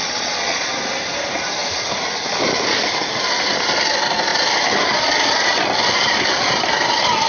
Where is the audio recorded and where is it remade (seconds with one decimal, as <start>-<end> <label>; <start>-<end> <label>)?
0.0-0.7 remade; 0.7-7.3 recorded